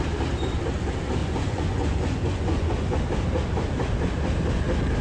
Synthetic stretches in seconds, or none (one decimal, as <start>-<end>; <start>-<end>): 1.2-3.0